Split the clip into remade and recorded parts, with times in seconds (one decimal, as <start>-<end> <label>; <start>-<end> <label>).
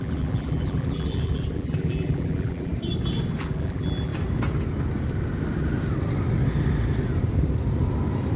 0.0-2.7 remade; 2.7-3.4 recorded; 3.4-4.1 remade; 4.1-8.4 recorded